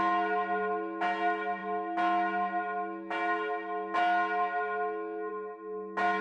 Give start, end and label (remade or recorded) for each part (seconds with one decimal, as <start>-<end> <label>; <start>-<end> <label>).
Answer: 0.0-6.2 recorded

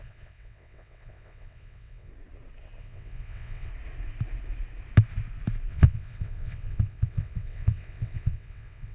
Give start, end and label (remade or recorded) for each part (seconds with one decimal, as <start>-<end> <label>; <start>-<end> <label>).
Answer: 0.0-2.1 remade; 2.1-2.8 recorded; 2.8-3.7 remade; 3.7-5.7 recorded; 5.7-8.9 remade

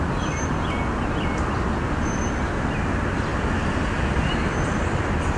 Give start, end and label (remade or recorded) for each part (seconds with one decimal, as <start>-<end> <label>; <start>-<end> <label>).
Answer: 0.0-5.4 recorded

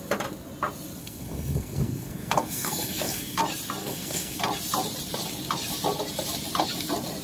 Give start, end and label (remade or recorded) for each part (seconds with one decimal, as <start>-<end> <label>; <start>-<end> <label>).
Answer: 0.0-1.0 recorded; 1.0-3.4 remade; 3.4-3.8 recorded; 3.8-4.4 remade; 4.4-7.2 recorded

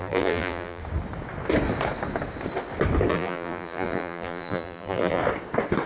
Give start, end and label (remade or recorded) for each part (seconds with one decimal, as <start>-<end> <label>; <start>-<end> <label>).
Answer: 0.0-0.8 remade; 0.8-3.1 recorded; 3.1-5.2 remade; 5.2-5.9 recorded

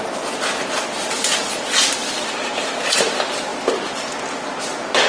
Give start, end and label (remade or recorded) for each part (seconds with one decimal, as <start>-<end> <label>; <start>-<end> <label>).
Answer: 0.0-5.1 recorded